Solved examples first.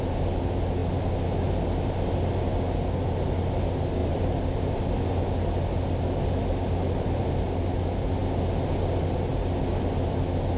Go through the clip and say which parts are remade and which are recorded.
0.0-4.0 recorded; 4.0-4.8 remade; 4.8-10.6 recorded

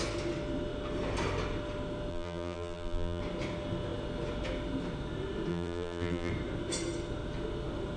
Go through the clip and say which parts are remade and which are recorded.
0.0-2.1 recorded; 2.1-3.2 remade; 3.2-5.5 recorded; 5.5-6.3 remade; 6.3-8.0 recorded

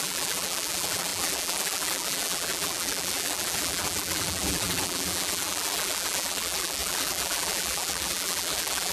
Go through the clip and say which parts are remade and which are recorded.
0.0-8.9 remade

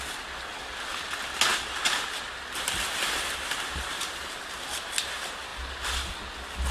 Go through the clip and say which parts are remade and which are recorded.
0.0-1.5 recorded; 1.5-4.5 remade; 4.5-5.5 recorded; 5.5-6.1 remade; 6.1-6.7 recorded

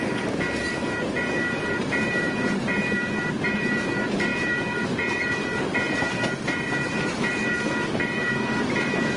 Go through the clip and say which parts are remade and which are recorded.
0.0-9.2 remade